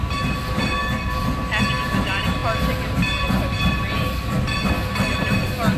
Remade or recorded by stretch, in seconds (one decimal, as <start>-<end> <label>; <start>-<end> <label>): 0.0-5.8 recorded